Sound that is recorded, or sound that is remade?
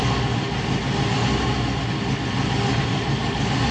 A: recorded